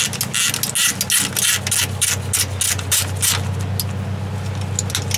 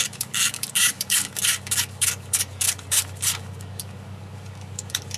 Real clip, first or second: first